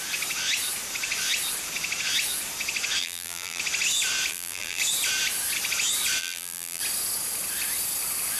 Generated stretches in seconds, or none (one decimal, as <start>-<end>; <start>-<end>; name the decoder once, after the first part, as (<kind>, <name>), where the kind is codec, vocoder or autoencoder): 3.0-3.6 (vocoder, BigVGAN v2); 4.3-4.8; 6.2-6.8